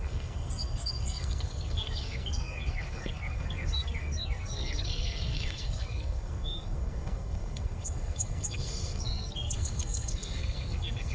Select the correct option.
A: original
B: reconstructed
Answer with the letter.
B